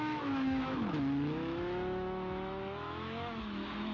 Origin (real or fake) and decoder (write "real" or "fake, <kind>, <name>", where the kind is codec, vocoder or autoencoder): fake, autoencoder, DAC-VAE